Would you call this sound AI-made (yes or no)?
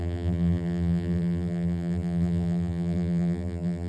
yes